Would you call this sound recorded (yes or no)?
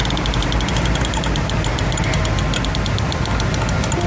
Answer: yes